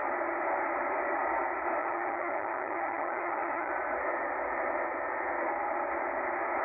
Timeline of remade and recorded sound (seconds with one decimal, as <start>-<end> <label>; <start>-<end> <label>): 0.0-1.8 recorded; 1.8-3.7 remade; 3.7-6.6 recorded